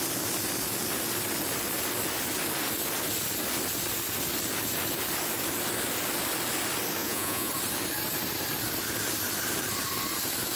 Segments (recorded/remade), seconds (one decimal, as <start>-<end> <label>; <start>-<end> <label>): 0.0-7.0 recorded; 7.0-7.5 remade; 7.5-10.6 recorded